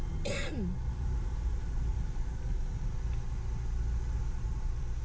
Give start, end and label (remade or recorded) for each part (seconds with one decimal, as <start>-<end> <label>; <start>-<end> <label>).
0.0-0.4 remade; 0.4-0.9 recorded; 0.9-1.9 remade; 1.9-5.0 recorded